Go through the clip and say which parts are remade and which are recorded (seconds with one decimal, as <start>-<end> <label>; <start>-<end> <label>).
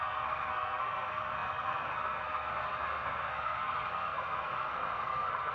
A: 0.0-5.5 remade